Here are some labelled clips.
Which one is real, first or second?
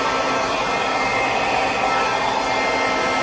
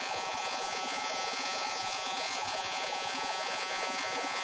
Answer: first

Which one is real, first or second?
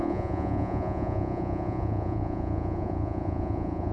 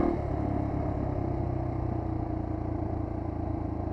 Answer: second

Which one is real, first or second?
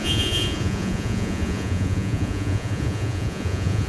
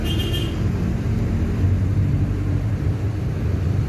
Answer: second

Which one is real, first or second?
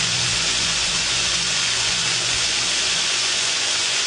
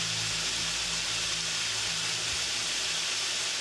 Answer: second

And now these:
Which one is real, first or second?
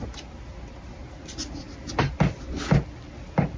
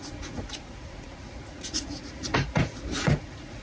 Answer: first